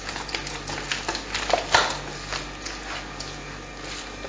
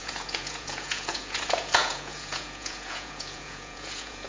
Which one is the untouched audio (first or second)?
first